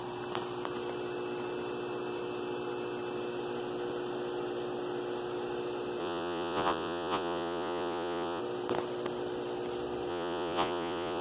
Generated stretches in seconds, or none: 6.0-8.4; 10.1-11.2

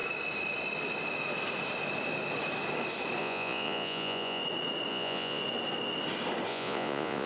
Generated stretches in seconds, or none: 3.2-4.4; 4.9-5.4; 6.5-7.3